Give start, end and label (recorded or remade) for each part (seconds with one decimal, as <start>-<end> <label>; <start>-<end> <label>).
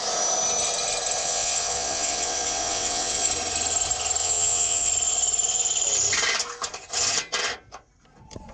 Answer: 0.0-1.2 recorded; 1.2-3.3 remade; 3.3-4.2 recorded; 4.2-4.9 remade; 4.9-8.5 recorded